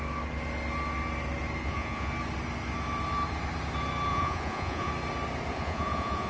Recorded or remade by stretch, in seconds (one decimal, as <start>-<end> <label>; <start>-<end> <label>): 0.0-1.6 recorded; 1.6-2.1 remade; 2.1-4.1 recorded; 4.1-4.9 remade; 4.9-5.5 recorded; 5.5-6.3 remade